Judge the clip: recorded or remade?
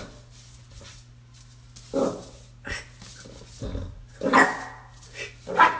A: recorded